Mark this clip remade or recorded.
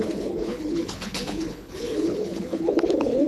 remade